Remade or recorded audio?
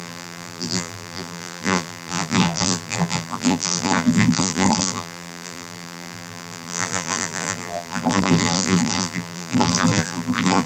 remade